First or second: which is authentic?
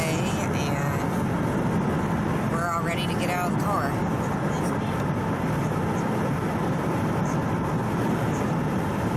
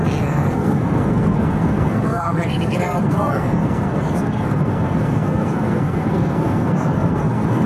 first